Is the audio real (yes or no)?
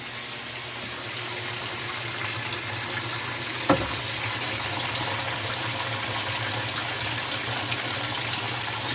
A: yes